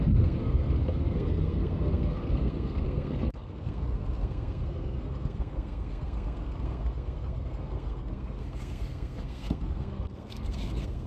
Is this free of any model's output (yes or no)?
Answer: no